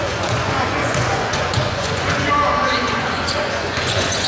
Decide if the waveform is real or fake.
fake